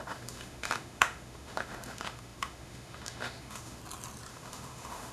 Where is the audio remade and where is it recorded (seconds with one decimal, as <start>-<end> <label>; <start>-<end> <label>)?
0.0-3.8 remade; 3.8-4.3 recorded; 4.3-5.1 remade